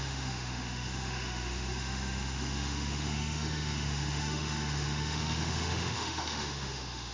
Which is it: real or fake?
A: fake